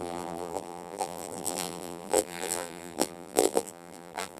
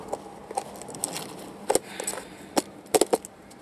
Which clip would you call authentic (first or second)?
second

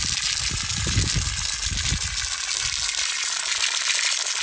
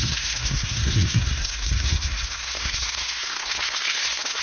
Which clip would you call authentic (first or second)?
first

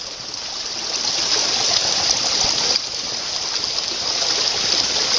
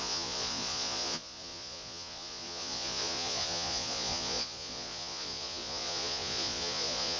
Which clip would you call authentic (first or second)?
first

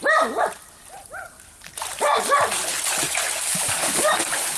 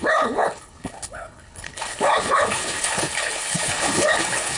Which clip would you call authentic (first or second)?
first